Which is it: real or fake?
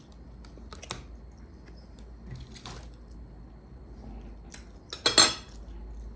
real